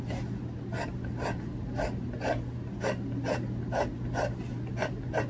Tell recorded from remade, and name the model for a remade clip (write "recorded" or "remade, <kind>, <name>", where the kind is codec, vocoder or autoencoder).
recorded